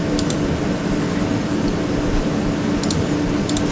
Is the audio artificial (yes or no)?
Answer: no